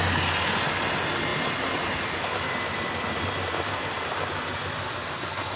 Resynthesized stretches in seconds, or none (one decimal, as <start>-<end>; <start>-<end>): none